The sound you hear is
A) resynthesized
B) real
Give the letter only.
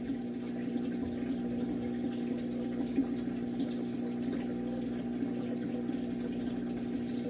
B